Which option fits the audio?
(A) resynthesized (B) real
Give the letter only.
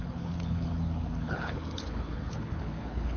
A